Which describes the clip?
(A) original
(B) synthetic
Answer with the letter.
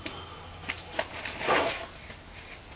A